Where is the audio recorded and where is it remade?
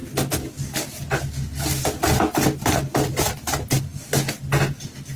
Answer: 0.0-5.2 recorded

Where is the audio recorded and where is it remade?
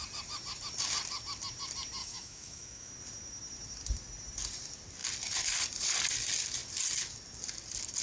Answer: 0.0-2.0 recorded; 2.0-2.9 remade; 2.9-8.0 recorded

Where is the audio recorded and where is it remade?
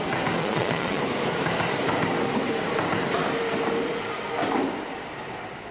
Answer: 0.0-0.4 recorded; 0.4-1.0 remade; 1.0-5.7 recorded